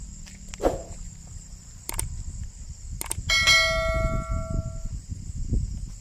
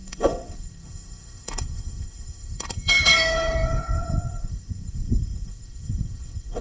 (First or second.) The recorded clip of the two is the first